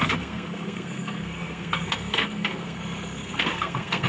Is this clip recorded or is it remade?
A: remade